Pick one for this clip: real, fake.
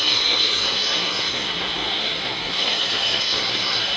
fake